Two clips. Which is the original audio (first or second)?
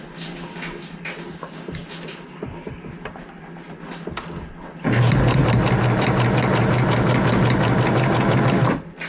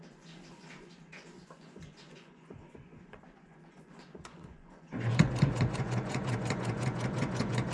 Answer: first